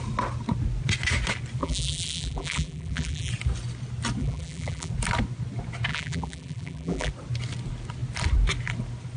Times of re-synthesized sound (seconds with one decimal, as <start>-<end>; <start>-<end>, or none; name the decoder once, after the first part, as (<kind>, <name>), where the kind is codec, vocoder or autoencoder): 1.6-3.3 (vocoder, BigVGAN v2); 4.2-4.9; 5.9-7.1

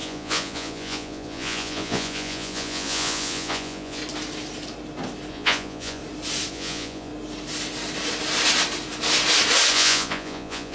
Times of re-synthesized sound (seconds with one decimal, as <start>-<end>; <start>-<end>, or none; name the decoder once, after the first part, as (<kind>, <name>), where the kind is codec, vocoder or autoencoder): 0.0-4.0 (vocoder, Vocos); 5.3-6.0; 6.5-7.1; 9.7-10.7

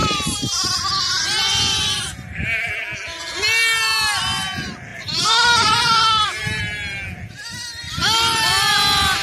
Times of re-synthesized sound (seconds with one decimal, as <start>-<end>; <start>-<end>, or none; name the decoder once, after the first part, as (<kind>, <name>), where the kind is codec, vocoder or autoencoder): 4.9-6.6 (vocoder, BigVGAN v2)